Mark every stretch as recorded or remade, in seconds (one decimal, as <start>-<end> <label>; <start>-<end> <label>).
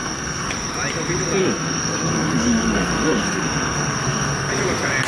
0.0-0.5 remade; 0.5-1.4 recorded; 1.4-4.5 remade; 4.5-5.1 recorded